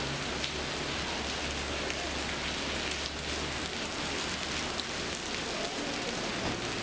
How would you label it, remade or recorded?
recorded